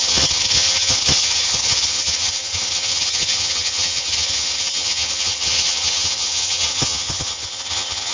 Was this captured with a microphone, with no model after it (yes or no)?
no